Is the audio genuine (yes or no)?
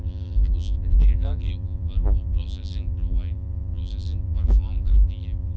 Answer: no